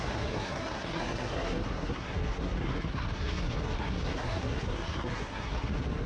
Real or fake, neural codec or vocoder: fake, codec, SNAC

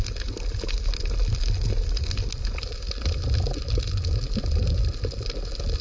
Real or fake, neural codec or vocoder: real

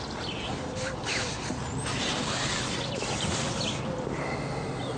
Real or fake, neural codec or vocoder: real